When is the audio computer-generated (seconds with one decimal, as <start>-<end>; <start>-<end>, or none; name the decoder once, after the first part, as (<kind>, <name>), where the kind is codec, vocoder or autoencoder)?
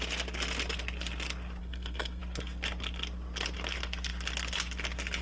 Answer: 1.6-2.2 (codec, SNAC)